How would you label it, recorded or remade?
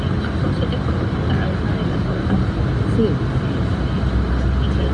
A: recorded